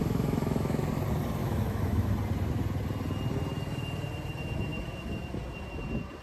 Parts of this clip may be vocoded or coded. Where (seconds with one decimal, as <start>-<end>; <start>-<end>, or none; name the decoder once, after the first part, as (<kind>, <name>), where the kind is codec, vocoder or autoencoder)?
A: 0.0-0.8 (autoencoder, DAC-VAE); 1.4-2.1